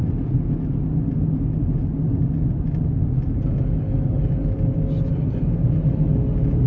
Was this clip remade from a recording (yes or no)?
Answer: no